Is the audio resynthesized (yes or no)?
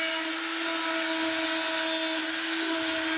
no